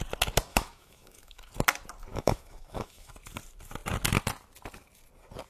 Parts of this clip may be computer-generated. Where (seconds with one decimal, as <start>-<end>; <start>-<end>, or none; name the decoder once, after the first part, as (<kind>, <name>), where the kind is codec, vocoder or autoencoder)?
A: 0.5-1.5 (autoencoder, DAC-VAE); 2.1-3.1